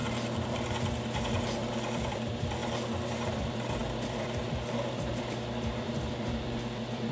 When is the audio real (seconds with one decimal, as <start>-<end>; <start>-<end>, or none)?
0.0-2.1; 2.6-3.4